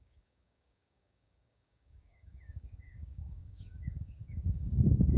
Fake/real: fake